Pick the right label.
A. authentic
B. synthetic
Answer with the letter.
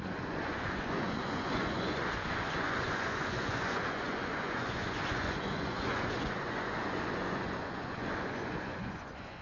B